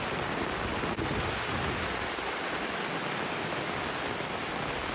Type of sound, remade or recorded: recorded